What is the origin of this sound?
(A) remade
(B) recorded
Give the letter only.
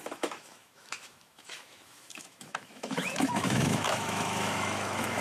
A